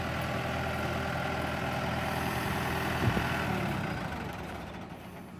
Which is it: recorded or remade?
recorded